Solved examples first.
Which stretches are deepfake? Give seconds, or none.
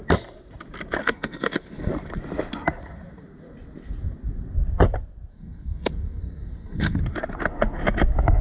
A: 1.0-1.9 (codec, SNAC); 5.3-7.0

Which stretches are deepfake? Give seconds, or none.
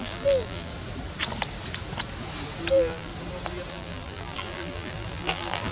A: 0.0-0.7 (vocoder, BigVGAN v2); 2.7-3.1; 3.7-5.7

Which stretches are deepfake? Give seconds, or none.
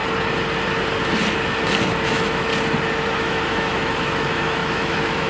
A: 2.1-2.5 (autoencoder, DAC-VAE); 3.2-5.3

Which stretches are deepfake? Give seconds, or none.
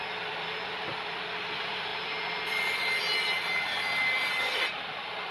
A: none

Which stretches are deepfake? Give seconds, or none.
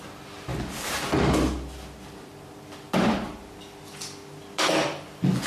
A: none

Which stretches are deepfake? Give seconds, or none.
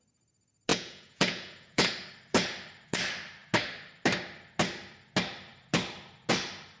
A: 0.7-1.9 (vocoder, Vocos)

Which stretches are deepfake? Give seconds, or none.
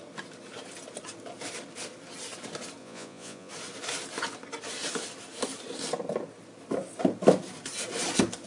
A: 2.8-3.5 (vocoder, Vocos)